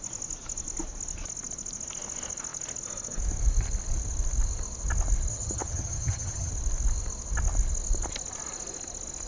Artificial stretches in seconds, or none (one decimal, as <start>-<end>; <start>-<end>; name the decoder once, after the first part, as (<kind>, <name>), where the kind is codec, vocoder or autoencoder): 5.3-6.5 (vocoder, HiFi-GAN)